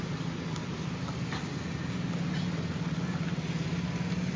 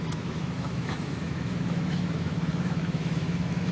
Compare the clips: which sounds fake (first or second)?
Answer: second